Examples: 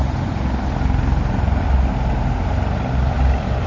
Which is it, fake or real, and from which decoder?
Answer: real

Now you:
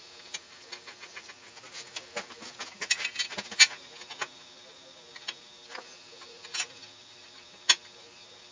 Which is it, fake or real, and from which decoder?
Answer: real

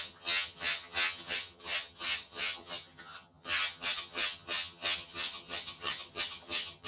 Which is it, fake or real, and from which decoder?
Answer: fake, vocoder, HiFi-GAN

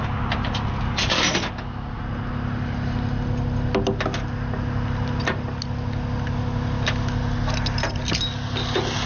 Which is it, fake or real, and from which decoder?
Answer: real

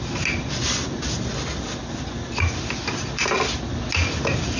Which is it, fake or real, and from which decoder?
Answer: real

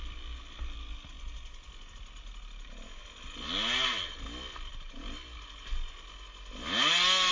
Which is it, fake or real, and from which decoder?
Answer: real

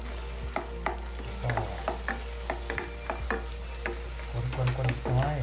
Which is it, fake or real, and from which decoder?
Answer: real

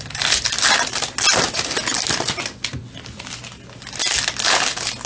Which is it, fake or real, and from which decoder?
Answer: real